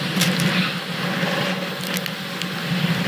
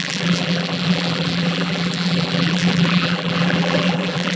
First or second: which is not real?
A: second